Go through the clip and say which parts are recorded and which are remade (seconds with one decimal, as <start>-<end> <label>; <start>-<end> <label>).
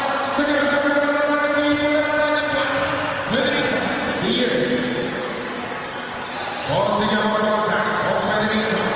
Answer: 0.0-1.4 remade; 1.4-3.6 recorded; 3.6-5.2 remade; 5.2-7.1 recorded; 7.1-9.0 remade